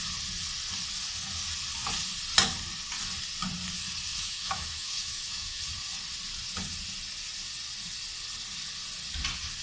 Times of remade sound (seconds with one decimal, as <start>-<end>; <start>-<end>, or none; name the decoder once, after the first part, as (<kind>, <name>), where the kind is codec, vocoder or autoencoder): 4.1-5.6 (autoencoder, DAC-VAE)